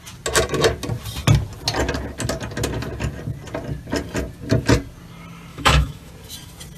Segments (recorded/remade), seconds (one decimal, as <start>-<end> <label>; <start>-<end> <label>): 0.0-5.5 recorded; 5.5-6.1 remade; 6.1-6.8 recorded